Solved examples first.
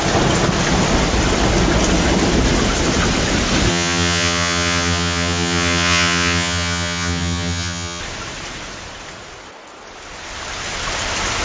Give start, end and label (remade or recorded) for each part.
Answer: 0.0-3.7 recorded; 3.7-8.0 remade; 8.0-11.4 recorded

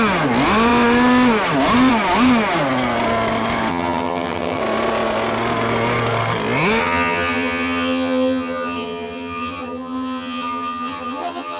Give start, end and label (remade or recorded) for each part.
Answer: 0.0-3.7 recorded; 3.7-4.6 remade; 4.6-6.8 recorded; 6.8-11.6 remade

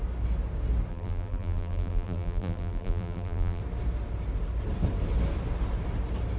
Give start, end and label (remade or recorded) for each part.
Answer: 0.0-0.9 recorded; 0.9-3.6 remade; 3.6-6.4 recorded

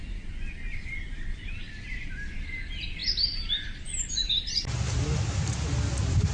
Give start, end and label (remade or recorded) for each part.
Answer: 0.0-6.3 recorded

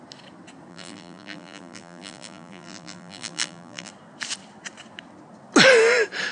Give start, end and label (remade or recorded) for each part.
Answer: 0.0-0.7 recorded; 0.7-3.9 remade; 3.9-6.3 recorded